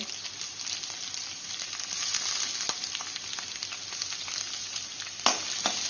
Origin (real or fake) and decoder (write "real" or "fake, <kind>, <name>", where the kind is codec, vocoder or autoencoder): real